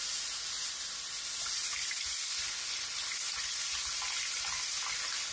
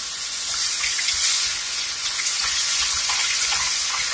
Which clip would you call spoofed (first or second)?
second